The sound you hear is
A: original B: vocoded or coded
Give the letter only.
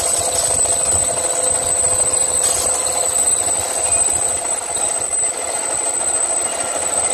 A